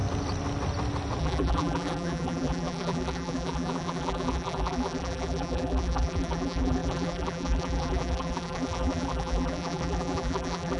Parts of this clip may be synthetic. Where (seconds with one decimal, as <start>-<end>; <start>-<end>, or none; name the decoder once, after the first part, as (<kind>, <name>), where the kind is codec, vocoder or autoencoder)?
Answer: 1.2-10.8 (vocoder, BigVGAN v2)